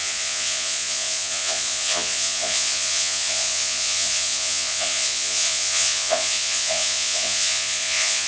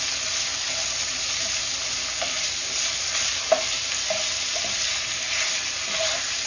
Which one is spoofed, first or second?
first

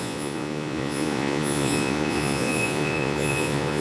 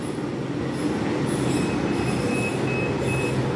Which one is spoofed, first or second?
first